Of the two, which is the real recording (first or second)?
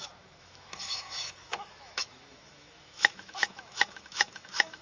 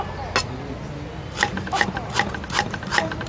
second